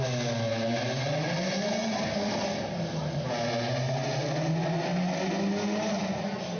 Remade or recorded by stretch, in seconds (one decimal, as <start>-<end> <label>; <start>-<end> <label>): 0.0-6.6 recorded